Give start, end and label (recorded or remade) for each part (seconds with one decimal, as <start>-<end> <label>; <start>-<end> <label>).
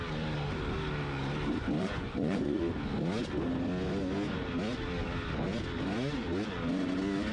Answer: 0.0-1.8 recorded; 1.8-2.6 remade; 2.6-7.3 recorded